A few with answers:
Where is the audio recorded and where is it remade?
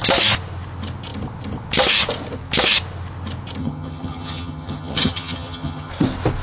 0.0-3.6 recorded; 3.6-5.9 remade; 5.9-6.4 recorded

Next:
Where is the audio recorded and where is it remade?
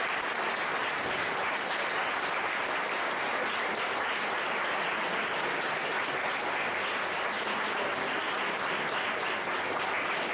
0.0-10.3 recorded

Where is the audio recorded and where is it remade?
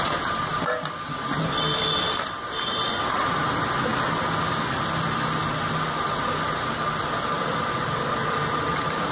0.0-9.1 recorded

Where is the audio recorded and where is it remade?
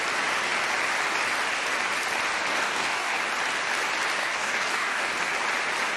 0.0-2.5 recorded; 2.5-3.2 remade; 3.2-4.2 recorded; 4.2-5.0 remade; 5.0-6.0 recorded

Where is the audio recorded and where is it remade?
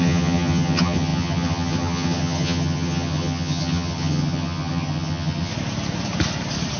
0.0-5.5 remade; 5.5-6.8 recorded